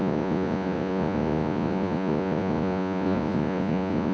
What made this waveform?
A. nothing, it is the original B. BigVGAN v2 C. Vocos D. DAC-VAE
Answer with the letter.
C